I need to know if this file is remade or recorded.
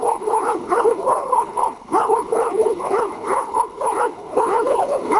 remade